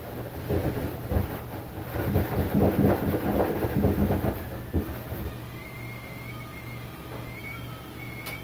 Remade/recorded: recorded